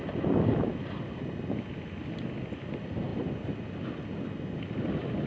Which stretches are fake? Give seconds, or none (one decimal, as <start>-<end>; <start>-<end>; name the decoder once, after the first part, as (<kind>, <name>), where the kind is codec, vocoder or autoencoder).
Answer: none